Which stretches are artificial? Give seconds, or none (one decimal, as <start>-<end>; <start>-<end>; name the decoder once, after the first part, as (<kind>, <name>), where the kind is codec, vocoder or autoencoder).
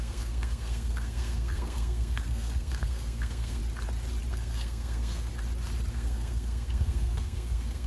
0.0-3.6 (codec, SNAC); 4.3-5.3; 5.9-7.9